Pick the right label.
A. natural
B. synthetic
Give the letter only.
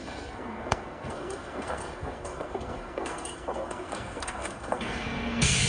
B